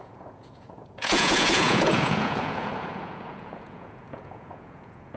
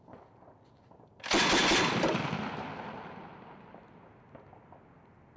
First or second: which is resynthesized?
first